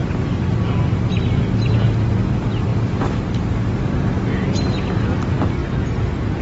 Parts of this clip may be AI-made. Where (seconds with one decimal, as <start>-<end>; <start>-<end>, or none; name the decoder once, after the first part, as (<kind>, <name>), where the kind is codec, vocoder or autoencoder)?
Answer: 2.7-3.4 (vocoder, BigVGAN v2); 5.6-6.4